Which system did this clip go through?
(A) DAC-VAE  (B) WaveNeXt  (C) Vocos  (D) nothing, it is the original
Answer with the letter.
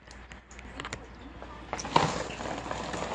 D